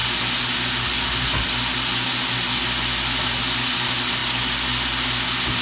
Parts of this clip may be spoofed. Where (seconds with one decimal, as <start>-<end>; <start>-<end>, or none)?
none